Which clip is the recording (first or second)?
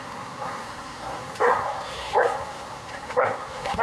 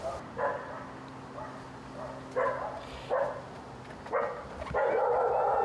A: second